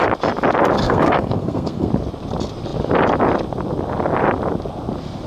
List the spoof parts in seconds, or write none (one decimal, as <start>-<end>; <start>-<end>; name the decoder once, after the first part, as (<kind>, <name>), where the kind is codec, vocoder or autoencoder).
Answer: 0.8-1.9 (codec, SNAC)